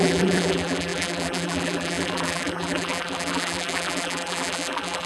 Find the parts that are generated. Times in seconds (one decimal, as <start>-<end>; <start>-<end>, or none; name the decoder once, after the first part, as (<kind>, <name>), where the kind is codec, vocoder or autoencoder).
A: 0.0-5.1 (vocoder, BigVGAN v2)